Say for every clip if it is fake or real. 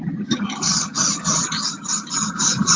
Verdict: real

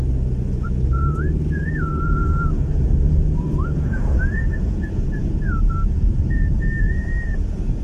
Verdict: fake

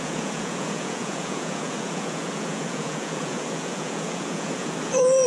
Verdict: fake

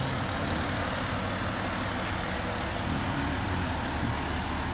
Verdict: real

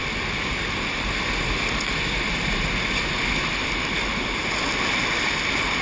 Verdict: real